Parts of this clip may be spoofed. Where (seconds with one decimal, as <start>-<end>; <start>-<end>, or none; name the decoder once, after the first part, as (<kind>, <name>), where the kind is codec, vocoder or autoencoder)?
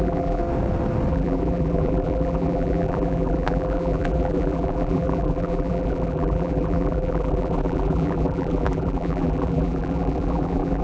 0.0-0.4 (vocoder, BigVGAN v2); 1.1-10.8